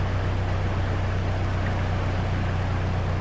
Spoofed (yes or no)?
no